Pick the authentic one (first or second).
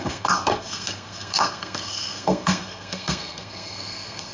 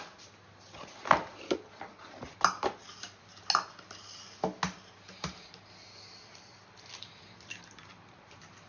second